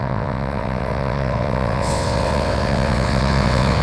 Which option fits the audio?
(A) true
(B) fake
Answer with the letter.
B